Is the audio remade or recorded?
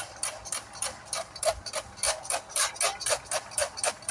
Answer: recorded